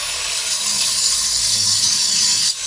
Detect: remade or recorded remade